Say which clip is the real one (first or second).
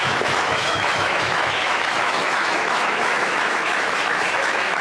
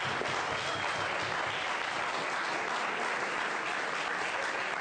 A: second